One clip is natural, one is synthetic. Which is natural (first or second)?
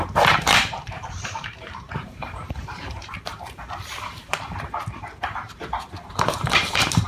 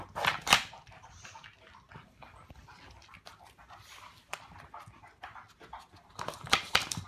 second